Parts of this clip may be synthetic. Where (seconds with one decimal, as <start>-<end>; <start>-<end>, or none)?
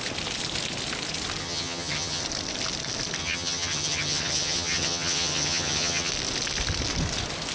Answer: 1.4-2.2; 3.2-6.1